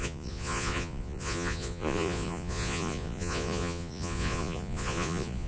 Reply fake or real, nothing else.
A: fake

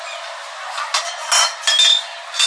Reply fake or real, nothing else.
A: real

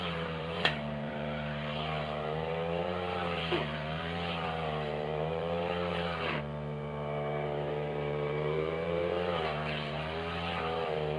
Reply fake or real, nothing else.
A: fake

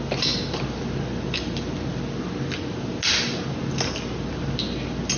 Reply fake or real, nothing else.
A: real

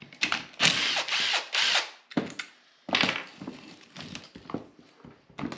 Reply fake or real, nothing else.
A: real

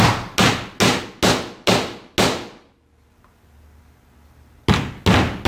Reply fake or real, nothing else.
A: real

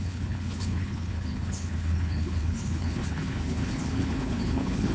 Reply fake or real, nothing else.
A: fake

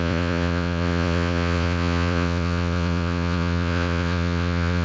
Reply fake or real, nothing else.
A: fake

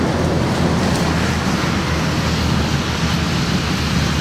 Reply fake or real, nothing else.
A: real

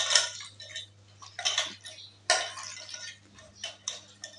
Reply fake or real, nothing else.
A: real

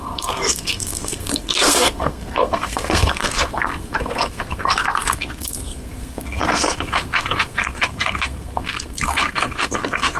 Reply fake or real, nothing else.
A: fake